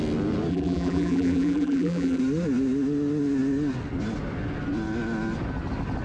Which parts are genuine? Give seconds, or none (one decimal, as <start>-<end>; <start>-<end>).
0.0-0.5; 2.2-6.0